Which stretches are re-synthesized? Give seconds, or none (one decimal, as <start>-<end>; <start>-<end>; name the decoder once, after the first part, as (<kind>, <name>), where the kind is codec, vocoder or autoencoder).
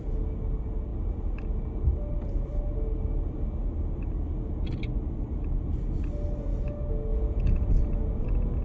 7.1-8.6 (vocoder, Vocos)